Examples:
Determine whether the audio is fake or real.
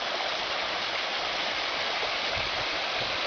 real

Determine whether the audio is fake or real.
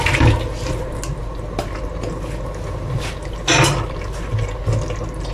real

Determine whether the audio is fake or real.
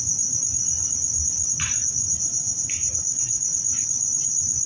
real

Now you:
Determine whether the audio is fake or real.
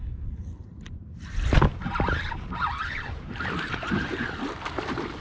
real